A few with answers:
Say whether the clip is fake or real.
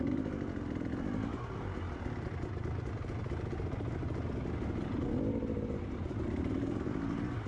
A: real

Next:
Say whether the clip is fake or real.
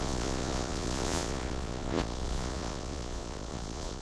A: fake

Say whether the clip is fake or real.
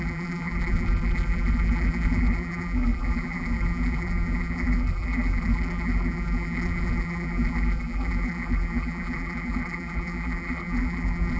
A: fake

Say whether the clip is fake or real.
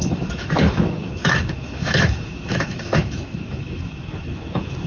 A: fake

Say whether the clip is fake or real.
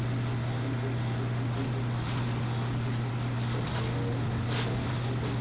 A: real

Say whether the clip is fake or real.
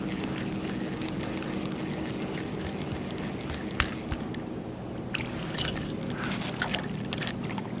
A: real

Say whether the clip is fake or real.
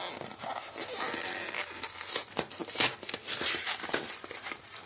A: real